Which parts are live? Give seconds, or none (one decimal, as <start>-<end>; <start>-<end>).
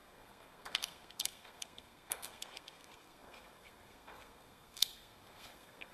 none